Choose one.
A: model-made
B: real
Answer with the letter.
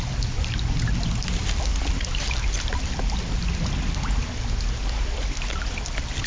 B